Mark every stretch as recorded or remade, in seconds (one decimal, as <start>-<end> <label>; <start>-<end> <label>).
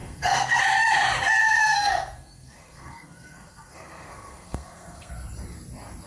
0.0-0.6 remade; 0.6-1.4 recorded; 1.4-5.1 remade; 5.1-6.1 recorded